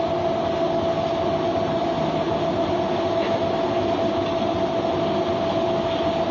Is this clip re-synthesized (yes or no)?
no